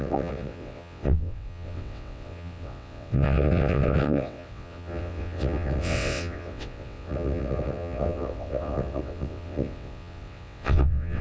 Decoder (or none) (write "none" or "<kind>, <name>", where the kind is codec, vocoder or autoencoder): vocoder, WaveNeXt